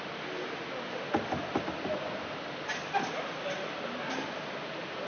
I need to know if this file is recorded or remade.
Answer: recorded